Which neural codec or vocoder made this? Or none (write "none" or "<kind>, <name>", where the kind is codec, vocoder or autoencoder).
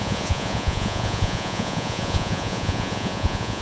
vocoder, Vocos